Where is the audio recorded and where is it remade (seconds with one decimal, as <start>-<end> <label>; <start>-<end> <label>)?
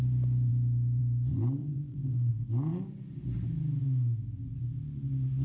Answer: 0.0-1.6 recorded; 1.6-2.3 remade; 2.3-5.4 recorded